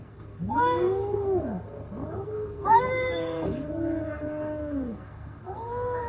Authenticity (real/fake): fake